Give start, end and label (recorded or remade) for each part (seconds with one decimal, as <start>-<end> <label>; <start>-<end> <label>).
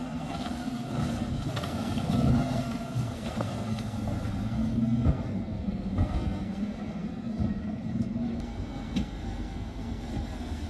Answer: 0.0-10.7 remade